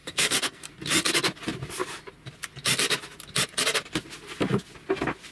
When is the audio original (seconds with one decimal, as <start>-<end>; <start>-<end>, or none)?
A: 0.7-5.3